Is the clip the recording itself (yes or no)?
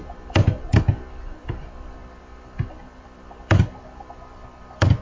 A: no